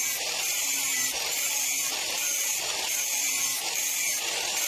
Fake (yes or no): yes